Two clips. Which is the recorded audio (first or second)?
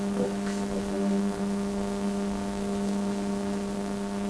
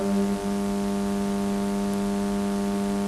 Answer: second